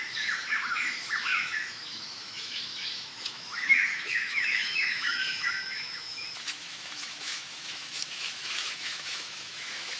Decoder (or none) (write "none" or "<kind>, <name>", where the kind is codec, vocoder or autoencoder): autoencoder, DAC-VAE